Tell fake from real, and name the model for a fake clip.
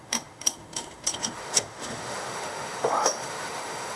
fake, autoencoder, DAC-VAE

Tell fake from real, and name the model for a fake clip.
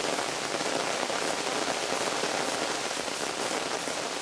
real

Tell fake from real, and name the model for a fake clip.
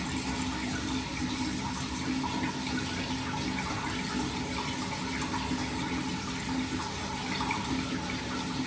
real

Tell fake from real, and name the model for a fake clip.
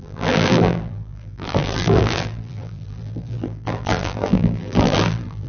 fake, vocoder, BigVGAN v2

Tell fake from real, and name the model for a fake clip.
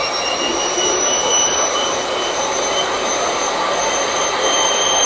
fake, vocoder, BigVGAN v2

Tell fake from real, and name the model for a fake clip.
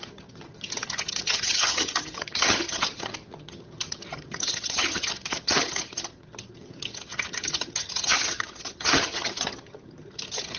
fake, vocoder, HiFi-GAN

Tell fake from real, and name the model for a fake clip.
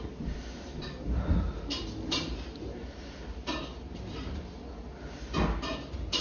real